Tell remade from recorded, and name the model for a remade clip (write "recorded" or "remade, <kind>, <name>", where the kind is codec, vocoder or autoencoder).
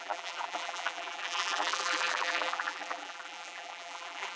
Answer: remade, vocoder, BigVGAN v2